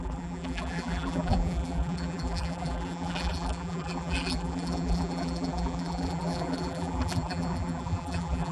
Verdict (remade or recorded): remade